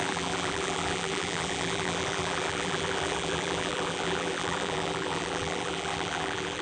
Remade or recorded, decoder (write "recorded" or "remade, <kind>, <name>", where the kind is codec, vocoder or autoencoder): remade, vocoder, BigVGAN v2